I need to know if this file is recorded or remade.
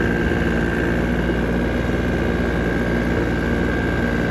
recorded